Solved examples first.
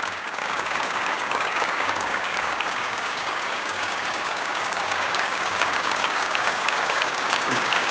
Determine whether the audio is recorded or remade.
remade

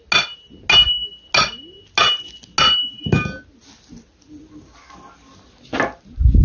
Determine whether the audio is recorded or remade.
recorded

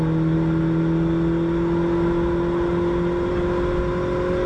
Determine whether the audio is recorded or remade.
recorded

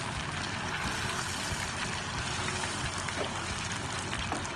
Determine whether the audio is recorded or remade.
recorded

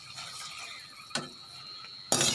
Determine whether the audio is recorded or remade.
recorded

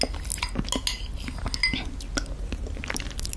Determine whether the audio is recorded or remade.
recorded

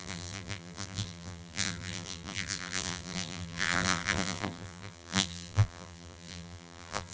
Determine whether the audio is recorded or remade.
remade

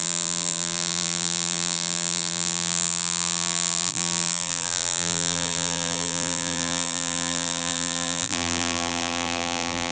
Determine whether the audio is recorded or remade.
remade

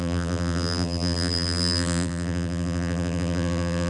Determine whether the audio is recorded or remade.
remade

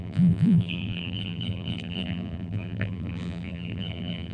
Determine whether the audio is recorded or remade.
remade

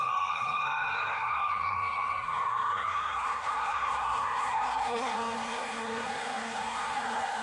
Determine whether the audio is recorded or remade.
remade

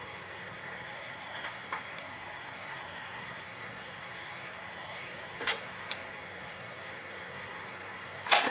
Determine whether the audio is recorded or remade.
remade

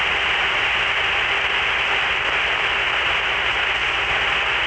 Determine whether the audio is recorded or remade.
recorded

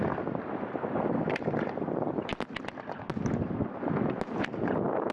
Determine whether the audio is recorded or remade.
recorded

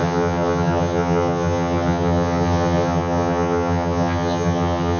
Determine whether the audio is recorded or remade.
remade